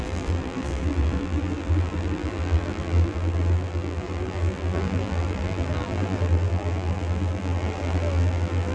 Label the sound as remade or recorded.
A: remade